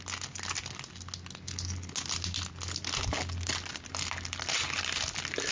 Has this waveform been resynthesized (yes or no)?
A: no